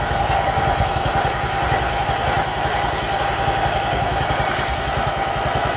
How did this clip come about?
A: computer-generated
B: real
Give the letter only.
B